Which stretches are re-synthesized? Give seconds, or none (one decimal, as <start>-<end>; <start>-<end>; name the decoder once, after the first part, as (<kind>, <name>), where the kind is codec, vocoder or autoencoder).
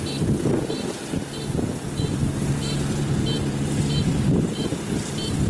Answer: 2.2-5.5 (vocoder, BigVGAN v2)